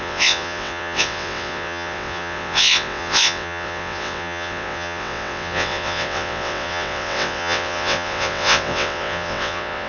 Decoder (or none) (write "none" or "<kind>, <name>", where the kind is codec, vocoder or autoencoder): vocoder, WaveNeXt